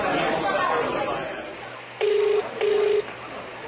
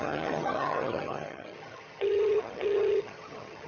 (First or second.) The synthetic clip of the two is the second